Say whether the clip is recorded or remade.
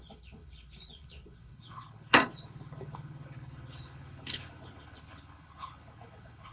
remade